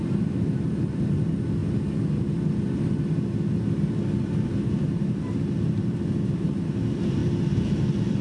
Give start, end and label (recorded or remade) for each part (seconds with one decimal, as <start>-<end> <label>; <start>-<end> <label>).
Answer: 0.0-1.6 remade; 1.6-4.2 recorded; 4.2-8.2 remade